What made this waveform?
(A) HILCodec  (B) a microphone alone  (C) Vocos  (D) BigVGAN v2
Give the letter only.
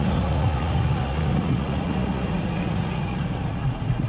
C